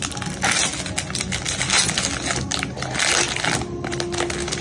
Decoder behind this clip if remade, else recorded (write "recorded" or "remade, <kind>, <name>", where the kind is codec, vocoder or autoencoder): recorded